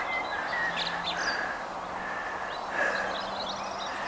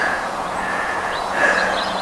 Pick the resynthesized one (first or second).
second